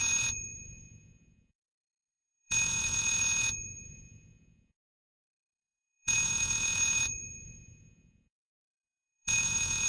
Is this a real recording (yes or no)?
no